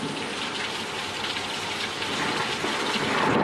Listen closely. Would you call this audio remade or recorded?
recorded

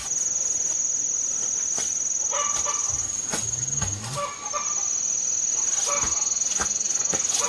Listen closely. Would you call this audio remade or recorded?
recorded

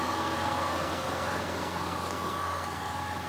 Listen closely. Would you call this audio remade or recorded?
remade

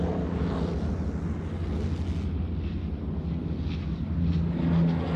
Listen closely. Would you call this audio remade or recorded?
recorded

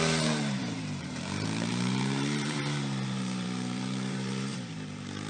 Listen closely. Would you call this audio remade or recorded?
remade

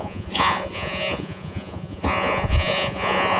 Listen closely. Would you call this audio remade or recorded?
remade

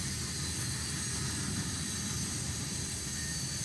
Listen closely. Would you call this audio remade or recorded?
recorded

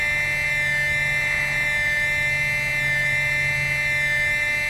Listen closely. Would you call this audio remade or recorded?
recorded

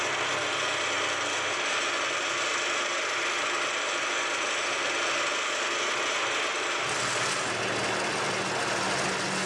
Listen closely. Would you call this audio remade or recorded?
recorded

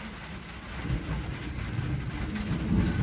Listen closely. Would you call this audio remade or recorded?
recorded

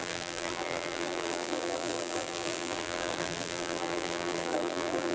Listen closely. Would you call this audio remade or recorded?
remade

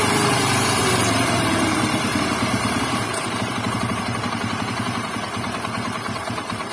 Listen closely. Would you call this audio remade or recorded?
remade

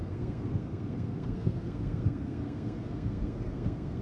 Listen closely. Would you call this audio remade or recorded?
remade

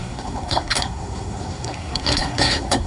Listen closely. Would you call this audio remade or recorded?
remade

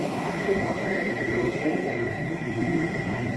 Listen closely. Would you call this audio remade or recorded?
remade